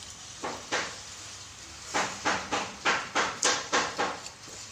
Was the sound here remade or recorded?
remade